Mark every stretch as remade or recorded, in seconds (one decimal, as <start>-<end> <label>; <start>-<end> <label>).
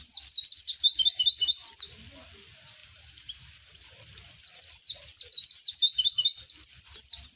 0.0-2.8 recorded; 2.8-3.4 remade; 3.4-7.4 recorded